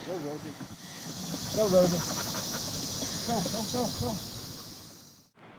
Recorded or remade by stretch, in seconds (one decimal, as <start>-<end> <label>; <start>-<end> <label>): 0.0-5.6 remade

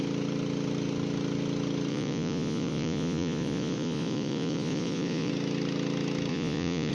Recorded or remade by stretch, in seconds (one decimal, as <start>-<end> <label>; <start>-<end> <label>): 0.0-1.9 recorded; 1.9-5.3 remade; 5.3-6.3 recorded; 6.3-6.9 remade

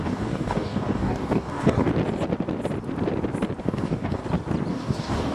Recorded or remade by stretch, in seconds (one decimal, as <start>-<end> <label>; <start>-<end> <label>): 0.0-1.9 remade; 1.9-3.6 recorded; 3.6-4.2 remade; 4.2-4.7 recorded; 4.7-5.3 remade

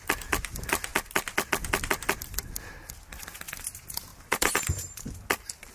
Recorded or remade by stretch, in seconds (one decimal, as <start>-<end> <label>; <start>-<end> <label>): 0.0-4.1 recorded; 4.1-5.2 remade; 5.2-5.7 recorded

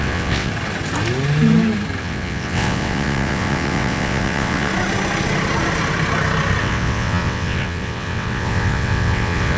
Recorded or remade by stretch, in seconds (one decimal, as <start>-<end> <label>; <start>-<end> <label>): 0.0-0.5 remade; 0.5-2.0 recorded; 2.0-4.7 remade; 4.7-6.6 recorded; 6.6-9.6 remade

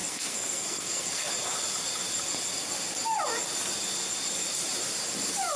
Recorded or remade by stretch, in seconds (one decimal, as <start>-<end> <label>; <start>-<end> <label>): 0.0-1.3 remade; 1.3-5.6 recorded

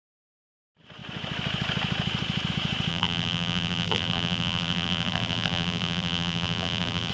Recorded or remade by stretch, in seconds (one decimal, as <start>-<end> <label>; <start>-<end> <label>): 0.0-2.9 recorded; 2.9-7.1 remade

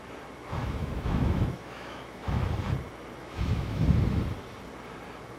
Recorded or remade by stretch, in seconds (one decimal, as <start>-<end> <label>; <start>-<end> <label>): 0.0-0.6 recorded; 0.6-2.5 remade; 2.5-3.2 recorded; 3.2-3.8 remade; 3.8-5.4 recorded